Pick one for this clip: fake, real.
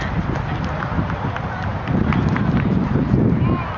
real